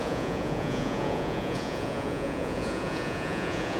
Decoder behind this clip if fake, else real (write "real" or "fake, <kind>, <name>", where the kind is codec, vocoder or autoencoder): fake, vocoder, Vocos